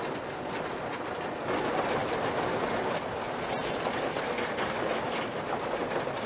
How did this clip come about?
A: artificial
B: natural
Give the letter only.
B